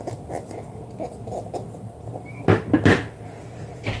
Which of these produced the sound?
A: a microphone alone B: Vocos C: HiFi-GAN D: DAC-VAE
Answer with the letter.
A